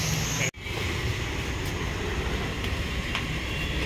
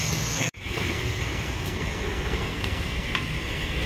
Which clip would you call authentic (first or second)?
first